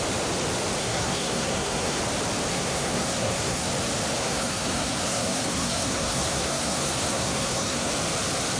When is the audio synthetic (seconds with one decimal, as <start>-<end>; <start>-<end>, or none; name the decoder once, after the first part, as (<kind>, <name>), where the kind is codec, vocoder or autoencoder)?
0.8-2.0 (codec, SNAC); 2.5-3.7; 4.2-7.9